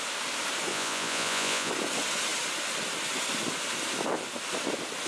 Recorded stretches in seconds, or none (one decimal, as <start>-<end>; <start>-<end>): 0.0-0.7; 1.7-5.1